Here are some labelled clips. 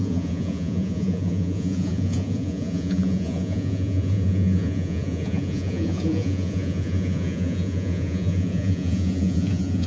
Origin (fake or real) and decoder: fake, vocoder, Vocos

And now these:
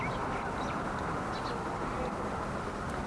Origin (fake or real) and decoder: real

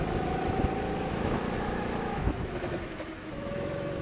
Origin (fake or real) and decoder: fake, autoencoder, DAC-VAE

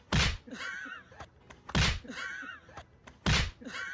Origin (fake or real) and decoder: real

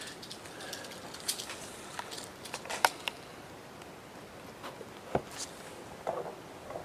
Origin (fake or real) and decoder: real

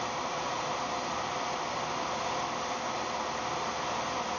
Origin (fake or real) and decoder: real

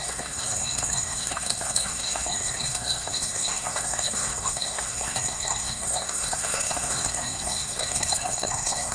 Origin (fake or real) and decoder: fake, codec, SNAC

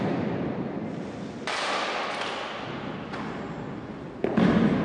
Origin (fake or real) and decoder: real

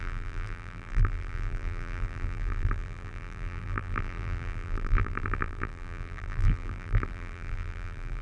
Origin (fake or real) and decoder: fake, vocoder, BigVGAN v2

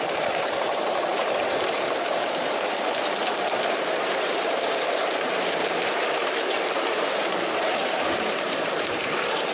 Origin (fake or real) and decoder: fake, vocoder, BigVGAN v2